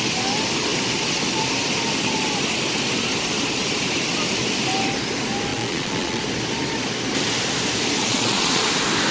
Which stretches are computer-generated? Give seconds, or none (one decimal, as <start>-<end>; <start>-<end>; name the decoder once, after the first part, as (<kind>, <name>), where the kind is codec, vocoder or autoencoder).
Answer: 5.5-6.2 (vocoder, Vocos); 8.0-8.7